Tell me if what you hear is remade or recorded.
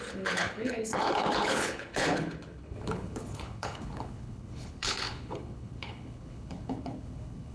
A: remade